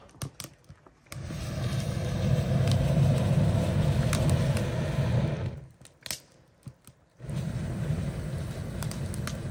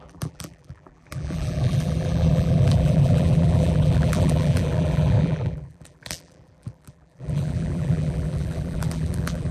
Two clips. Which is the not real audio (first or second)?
second